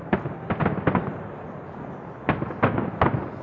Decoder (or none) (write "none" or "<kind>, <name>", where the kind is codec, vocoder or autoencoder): none